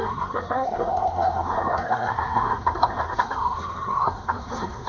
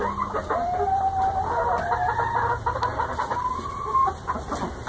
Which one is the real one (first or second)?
second